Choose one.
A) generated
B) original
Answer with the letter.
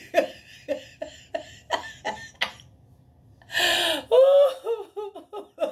B